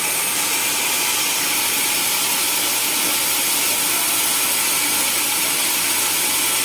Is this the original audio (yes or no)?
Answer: yes